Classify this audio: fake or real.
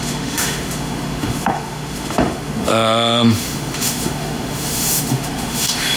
fake